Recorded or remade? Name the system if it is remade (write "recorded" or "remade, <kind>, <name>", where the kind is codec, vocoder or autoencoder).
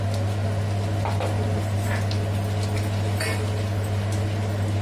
recorded